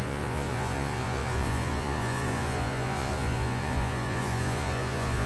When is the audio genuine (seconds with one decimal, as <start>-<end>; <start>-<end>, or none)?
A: none